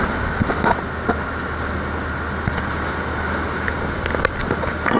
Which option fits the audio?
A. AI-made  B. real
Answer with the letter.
B